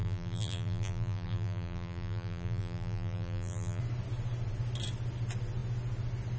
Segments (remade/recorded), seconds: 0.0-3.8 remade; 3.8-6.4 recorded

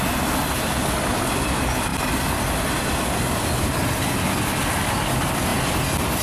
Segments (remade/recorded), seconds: 0.0-6.2 recorded

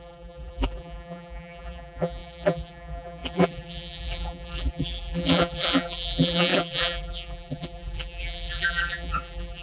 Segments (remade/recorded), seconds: 0.0-9.6 remade

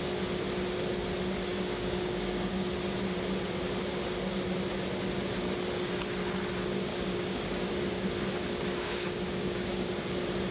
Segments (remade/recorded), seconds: 0.0-1.5 recorded; 1.5-2.6 remade; 2.6-6.9 recorded; 6.9-7.7 remade; 7.7-8.7 recorded; 8.7-9.9 remade; 9.9-10.5 recorded